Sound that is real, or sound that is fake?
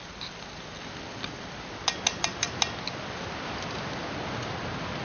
real